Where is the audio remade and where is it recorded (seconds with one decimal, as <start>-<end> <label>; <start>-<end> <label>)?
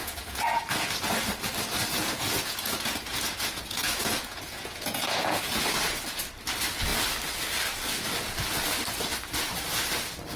0.0-0.9 remade; 0.9-1.9 recorded; 1.9-6.2 remade; 6.2-10.4 recorded